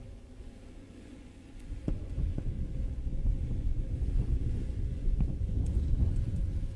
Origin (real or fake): fake